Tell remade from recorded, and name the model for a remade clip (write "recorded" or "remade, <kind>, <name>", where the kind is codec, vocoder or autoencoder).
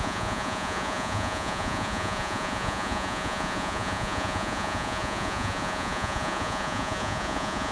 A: remade, vocoder, Vocos